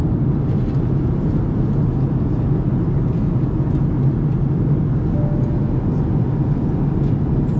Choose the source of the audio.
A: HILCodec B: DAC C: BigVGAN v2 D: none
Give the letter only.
D